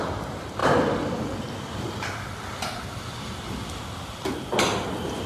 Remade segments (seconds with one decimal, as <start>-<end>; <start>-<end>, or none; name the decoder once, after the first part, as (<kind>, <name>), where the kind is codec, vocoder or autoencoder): 0.6-3.8 (vocoder, BigVGAN v2)